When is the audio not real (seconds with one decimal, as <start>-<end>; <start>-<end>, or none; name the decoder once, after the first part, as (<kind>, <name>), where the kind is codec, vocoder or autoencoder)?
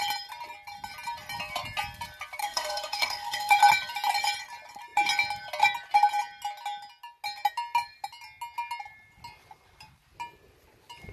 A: 2.4-3.6 (codec, SNAC)